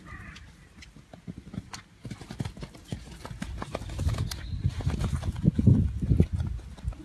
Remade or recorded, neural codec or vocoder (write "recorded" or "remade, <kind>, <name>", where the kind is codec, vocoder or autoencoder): recorded